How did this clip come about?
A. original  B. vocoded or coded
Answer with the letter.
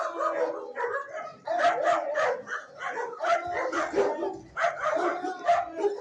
A